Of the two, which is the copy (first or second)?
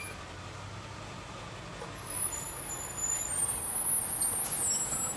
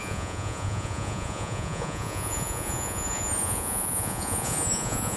second